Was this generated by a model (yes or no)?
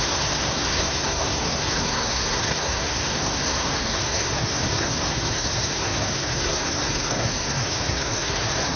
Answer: yes